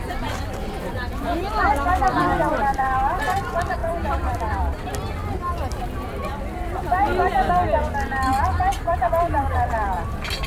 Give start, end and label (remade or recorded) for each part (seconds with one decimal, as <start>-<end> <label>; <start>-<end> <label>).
0.0-5.2 remade; 5.2-5.8 recorded; 5.8-6.2 remade; 6.2-8.4 recorded; 8.4-10.5 remade